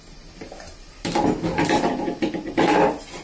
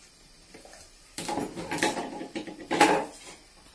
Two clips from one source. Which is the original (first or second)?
first